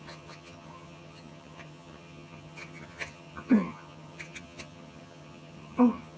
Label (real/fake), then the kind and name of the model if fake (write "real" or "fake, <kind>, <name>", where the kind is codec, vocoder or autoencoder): fake, vocoder, HiFi-GAN